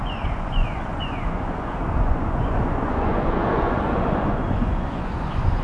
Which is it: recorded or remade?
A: remade